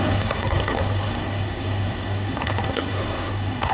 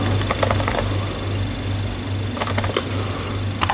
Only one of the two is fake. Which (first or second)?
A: first